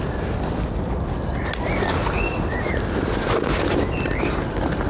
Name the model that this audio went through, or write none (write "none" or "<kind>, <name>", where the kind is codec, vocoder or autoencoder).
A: none